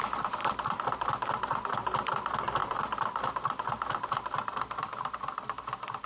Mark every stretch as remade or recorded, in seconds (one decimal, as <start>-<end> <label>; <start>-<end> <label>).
0.0-2.6 recorded; 2.6-6.1 remade